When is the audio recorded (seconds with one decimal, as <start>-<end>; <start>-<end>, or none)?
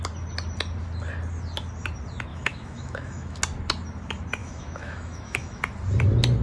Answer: 0.0-2.3; 3.4-4.4; 5.6-6.4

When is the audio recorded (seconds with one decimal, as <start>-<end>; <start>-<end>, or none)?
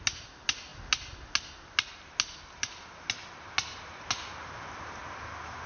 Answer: 0.0-5.7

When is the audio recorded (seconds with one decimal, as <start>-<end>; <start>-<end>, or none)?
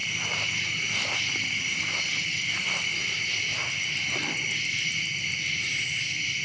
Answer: 0.0-6.4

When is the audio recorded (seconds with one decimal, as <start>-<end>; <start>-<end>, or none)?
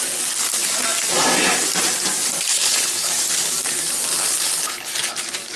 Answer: 0.0-2.5; 3.1-4.1; 5.1-5.6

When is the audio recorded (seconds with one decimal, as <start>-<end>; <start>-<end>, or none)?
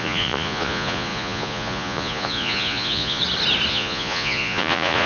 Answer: 3.2-3.7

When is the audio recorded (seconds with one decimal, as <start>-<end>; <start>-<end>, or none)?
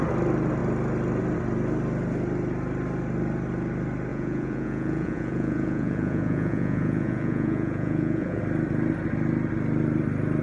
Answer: 0.0-4.1; 8.4-10.4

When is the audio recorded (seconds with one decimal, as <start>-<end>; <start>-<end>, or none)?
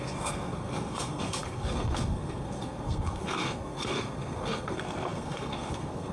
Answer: none